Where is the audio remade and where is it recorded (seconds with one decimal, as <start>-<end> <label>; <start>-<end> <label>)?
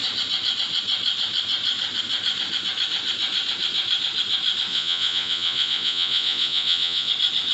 0.0-4.7 recorded; 4.7-7.1 remade; 7.1-7.5 recorded